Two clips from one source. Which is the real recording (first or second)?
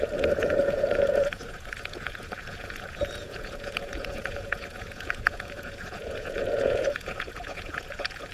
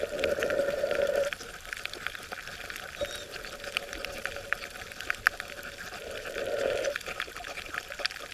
second